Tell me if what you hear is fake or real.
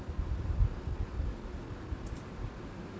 real